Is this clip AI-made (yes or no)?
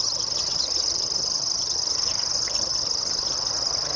yes